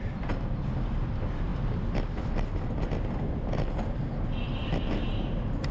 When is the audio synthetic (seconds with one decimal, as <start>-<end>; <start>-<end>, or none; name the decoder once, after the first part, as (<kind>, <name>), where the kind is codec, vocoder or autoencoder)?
none